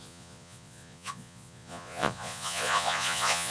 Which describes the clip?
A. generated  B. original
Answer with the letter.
A